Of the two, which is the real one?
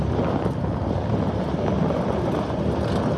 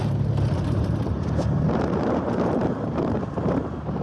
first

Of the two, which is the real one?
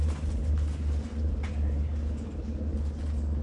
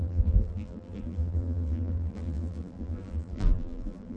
first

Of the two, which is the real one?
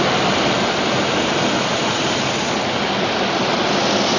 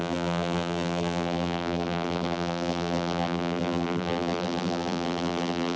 first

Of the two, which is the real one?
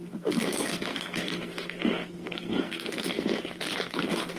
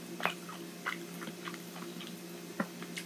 second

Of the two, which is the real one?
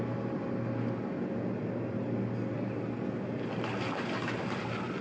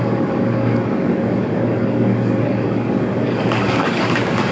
first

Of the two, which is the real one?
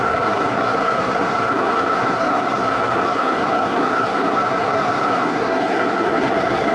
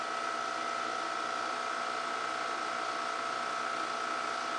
second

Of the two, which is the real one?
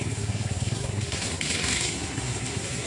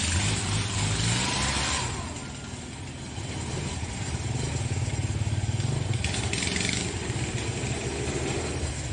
second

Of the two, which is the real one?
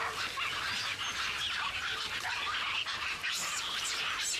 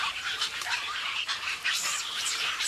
first